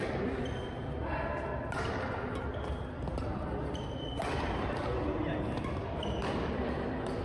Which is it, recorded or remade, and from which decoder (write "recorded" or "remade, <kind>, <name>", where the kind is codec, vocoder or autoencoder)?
recorded